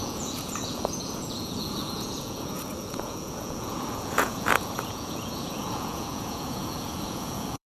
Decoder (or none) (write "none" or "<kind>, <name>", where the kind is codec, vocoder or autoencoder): vocoder, Vocos